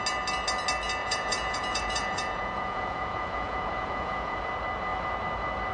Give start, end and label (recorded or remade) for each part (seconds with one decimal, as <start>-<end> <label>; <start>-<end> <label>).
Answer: 0.0-1.0 recorded; 1.0-4.4 remade; 4.4-5.7 recorded